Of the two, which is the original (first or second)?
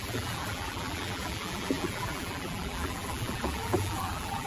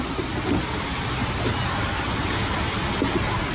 second